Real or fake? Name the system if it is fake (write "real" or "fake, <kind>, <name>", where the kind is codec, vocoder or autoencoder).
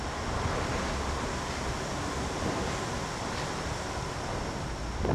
real